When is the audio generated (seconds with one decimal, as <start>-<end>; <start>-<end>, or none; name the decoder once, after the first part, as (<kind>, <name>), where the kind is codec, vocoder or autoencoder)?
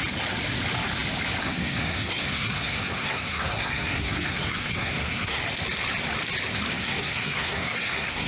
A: 1.4-5.4 (codec, SNAC); 6.8-8.3